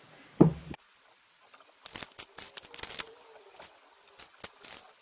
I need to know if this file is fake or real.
real